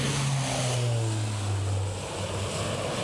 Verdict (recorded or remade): recorded